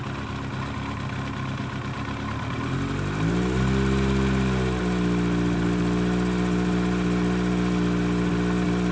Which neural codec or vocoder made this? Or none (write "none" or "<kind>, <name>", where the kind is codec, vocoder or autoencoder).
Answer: none